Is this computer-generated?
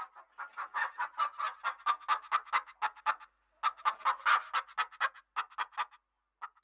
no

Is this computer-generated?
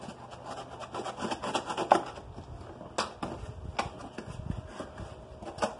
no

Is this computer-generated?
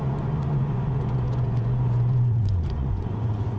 yes